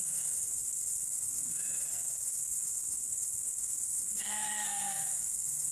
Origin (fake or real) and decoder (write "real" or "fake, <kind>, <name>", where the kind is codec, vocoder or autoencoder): fake, codec, SNAC